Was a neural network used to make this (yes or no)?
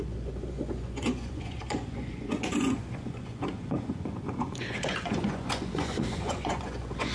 yes